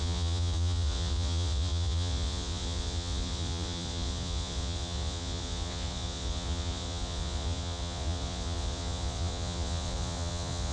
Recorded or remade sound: remade